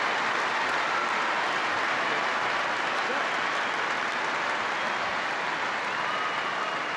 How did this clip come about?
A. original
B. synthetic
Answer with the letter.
A